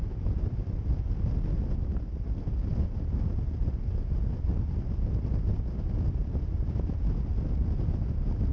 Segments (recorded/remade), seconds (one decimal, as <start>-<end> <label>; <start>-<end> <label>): 0.0-8.5 recorded